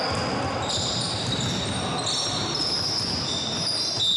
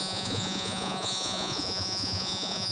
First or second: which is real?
first